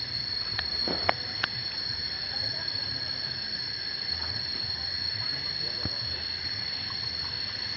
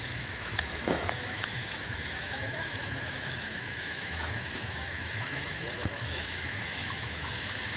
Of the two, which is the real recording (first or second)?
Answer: first